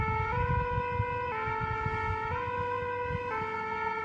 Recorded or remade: recorded